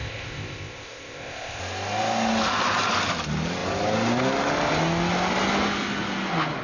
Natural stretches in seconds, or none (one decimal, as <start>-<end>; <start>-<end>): 1.6-6.6